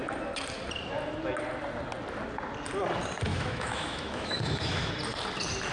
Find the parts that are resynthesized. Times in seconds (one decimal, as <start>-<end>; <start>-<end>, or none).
3.3-4.9